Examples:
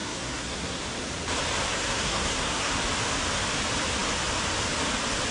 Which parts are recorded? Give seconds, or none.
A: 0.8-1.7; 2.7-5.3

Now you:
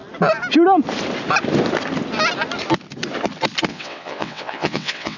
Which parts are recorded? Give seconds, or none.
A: 0.0-3.7

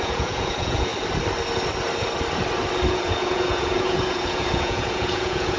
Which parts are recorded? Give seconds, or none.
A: 0.9-2.9

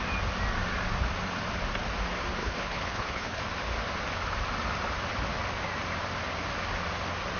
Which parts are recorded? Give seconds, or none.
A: 0.0-2.4; 3.4-7.4

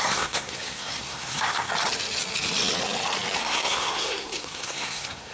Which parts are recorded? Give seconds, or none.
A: 1.7-3.4